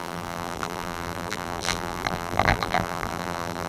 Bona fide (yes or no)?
no